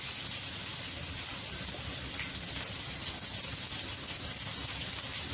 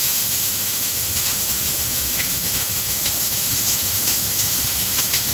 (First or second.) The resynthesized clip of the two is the second